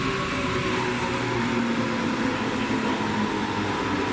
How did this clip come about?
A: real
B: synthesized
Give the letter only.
A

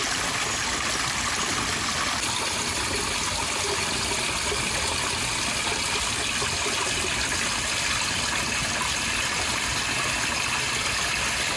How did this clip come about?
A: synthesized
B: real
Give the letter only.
B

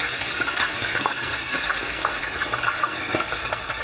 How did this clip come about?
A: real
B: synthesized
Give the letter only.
B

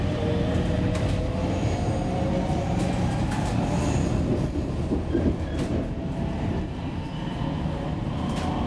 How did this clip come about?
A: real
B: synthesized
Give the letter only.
A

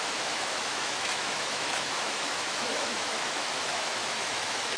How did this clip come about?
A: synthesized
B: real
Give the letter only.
A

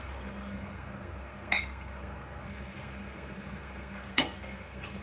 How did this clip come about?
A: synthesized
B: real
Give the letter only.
A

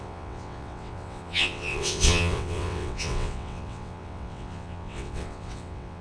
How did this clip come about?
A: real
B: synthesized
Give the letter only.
B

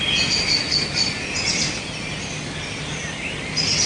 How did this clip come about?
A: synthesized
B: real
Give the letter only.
B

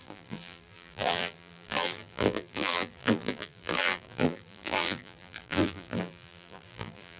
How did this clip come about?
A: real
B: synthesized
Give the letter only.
B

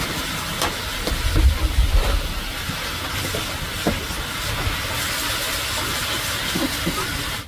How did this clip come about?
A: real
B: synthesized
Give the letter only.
A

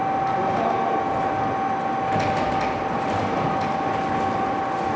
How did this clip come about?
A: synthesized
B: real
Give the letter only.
B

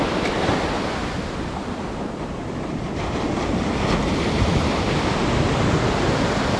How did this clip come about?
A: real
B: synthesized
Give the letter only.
A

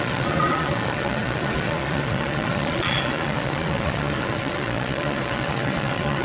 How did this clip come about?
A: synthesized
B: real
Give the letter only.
A